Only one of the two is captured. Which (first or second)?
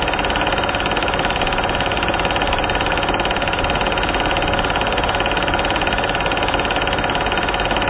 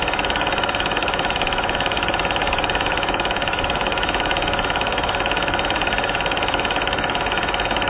first